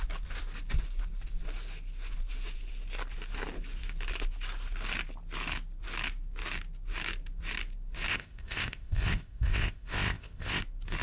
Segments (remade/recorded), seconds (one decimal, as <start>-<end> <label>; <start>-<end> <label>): 0.0-8.1 recorded; 8.1-10.6 remade; 10.6-11.0 recorded

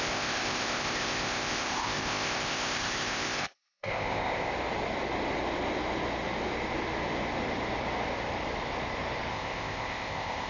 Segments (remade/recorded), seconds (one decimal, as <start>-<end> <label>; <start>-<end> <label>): 0.0-4.5 remade; 4.5-9.3 recorded; 9.3-10.5 remade

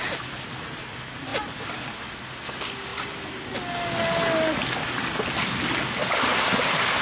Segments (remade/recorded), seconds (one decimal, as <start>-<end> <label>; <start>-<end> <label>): 0.0-7.0 recorded

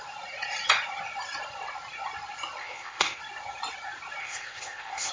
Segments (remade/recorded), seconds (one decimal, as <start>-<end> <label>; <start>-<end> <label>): 0.0-2.6 recorded; 2.6-3.2 remade; 3.2-4.2 recorded; 4.2-5.1 remade

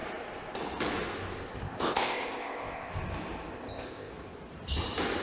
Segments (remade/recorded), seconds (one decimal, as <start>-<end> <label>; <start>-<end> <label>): 0.0-1.5 recorded; 1.5-2.9 remade; 2.9-3.5 recorded; 3.5-4.1 remade; 4.1-5.2 recorded

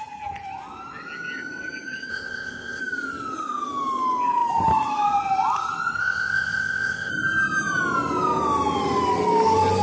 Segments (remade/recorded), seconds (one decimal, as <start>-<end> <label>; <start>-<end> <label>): 0.0-2.1 recorded; 2.1-2.8 remade; 2.8-6.0 recorded; 6.0-7.1 remade; 7.1-9.8 recorded

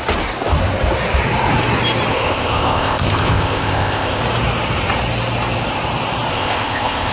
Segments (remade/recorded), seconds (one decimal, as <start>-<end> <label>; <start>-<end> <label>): 0.0-2.1 recorded; 2.1-4.2 remade; 4.2-6.3 recorded; 6.3-7.1 remade